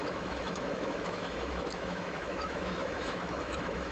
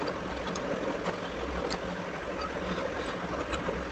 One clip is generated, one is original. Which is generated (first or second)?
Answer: first